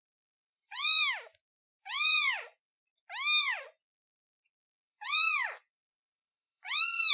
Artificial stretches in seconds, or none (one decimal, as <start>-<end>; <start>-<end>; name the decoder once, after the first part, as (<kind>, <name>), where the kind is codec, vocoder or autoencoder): 0.0-1.0 (vocoder, Vocos); 1.8-2.8; 3.4-7.1